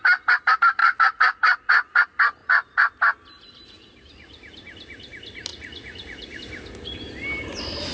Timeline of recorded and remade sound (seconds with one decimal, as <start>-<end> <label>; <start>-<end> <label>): 0.0-0.8 recorded; 0.8-2.0 remade; 2.0-2.4 recorded; 2.4-3.0 remade; 3.0-5.5 recorded; 5.5-6.4 remade; 6.4-7.9 recorded